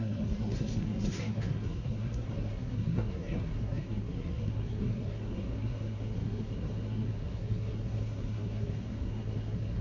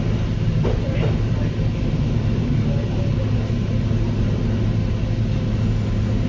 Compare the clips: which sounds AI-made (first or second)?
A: first